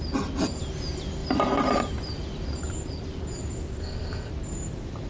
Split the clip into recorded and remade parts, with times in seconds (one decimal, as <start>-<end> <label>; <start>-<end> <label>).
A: 0.0-3.8 recorded; 3.8-4.3 remade; 4.3-5.1 recorded